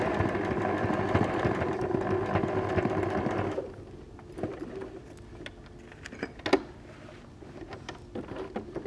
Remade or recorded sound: recorded